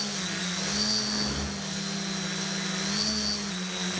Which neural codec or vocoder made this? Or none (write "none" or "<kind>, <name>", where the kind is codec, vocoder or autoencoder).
none